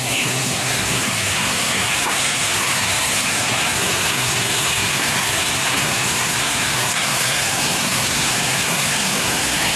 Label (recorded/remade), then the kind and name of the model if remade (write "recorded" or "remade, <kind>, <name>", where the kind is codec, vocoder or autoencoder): remade, codec, SNAC